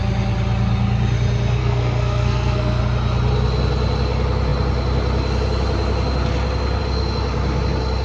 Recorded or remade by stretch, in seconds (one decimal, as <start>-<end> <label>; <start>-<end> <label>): 0.0-1.6 recorded; 1.6-2.8 remade; 2.8-8.0 recorded